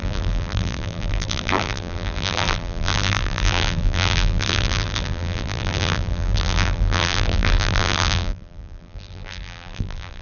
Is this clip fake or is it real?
fake